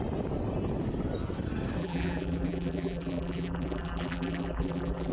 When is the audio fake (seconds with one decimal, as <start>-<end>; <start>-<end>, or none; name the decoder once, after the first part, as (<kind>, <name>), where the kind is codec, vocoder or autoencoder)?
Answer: 1.8-5.1 (vocoder, BigVGAN v2)